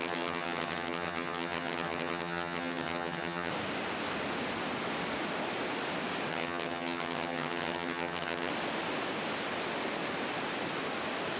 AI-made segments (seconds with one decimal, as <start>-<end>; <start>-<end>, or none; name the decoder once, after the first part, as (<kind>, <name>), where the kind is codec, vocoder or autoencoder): 0.0-3.5 (vocoder, HiFi-GAN); 6.3-8.5